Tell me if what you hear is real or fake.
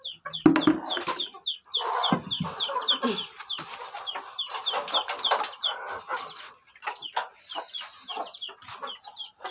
real